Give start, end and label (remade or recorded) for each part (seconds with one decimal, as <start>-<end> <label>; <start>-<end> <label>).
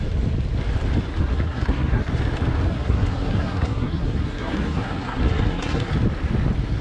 0.0-1.2 recorded; 1.2-2.1 remade; 2.1-2.7 recorded; 2.7-5.9 remade; 5.9-6.8 recorded